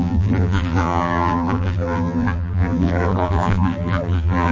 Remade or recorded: remade